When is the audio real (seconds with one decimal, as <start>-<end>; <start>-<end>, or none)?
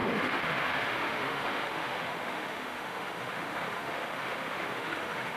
none